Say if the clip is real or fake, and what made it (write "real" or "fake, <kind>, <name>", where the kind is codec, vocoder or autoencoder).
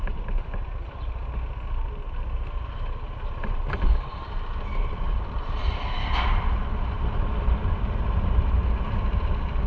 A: real